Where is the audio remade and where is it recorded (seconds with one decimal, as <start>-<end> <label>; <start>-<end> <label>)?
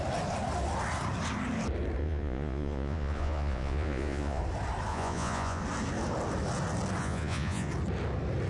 0.0-2.0 recorded; 2.0-4.4 remade; 4.4-4.9 recorded; 4.9-5.6 remade; 5.6-7.0 recorded; 7.0-7.7 remade; 7.7-8.5 recorded